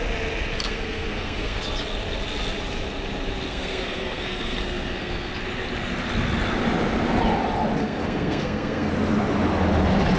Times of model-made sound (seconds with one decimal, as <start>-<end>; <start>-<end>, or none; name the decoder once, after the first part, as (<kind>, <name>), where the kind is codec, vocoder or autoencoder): 0.6-1.6 (codec, SNAC); 3.5-5.3; 7.8-8.9